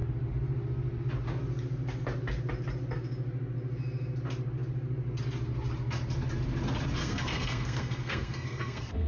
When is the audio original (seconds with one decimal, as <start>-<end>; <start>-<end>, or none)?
0.0-7.0